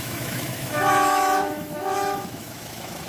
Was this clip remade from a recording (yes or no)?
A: yes